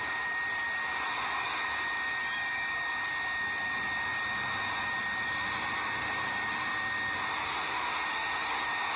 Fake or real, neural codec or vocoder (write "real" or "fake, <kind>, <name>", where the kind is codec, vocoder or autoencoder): real